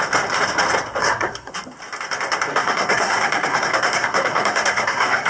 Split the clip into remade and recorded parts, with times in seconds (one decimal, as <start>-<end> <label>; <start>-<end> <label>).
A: 0.0-1.0 recorded; 1.0-1.5 remade; 1.5-2.5 recorded; 2.5-5.3 remade